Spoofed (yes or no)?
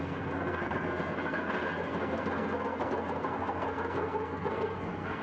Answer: yes